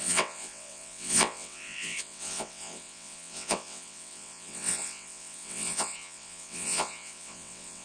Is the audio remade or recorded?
remade